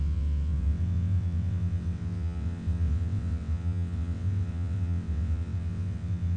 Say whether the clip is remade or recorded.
remade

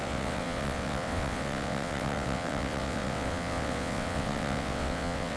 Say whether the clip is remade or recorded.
remade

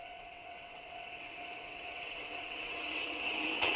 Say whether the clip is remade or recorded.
remade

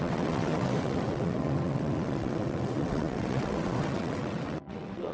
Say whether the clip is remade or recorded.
remade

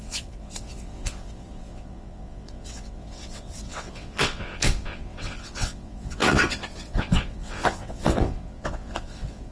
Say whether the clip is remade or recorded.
remade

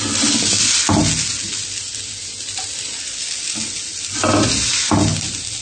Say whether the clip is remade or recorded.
recorded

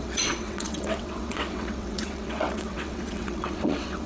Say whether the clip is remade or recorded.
remade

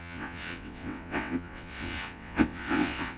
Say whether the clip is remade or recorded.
remade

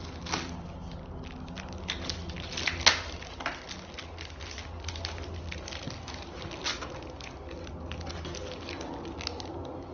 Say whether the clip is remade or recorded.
recorded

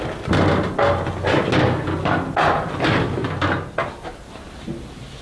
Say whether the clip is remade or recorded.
recorded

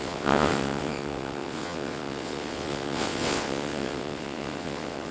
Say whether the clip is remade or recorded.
remade